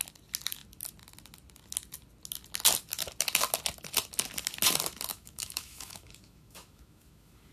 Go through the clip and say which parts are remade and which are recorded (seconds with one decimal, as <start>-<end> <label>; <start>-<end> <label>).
0.0-5.1 recorded; 5.1-7.5 remade